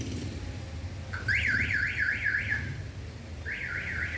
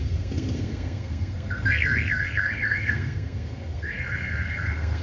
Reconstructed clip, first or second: second